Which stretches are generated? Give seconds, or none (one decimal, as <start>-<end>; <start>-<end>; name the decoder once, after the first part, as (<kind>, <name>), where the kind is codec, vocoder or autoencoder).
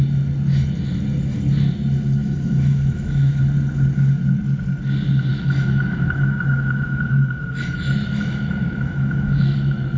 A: 2.2-3.4 (autoencoder, DAC-VAE); 5.3-10.0